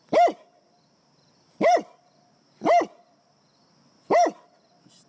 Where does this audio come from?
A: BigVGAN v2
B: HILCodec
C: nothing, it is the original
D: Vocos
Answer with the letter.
C